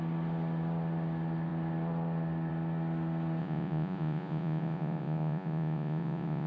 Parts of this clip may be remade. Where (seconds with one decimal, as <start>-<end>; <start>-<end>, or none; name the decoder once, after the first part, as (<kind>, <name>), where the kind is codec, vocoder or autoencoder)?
3.4-6.5 (vocoder, Vocos)